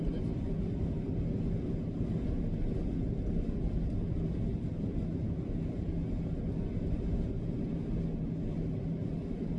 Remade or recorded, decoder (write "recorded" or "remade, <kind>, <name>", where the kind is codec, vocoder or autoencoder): recorded